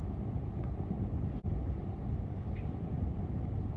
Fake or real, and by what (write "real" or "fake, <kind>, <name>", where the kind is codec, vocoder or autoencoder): real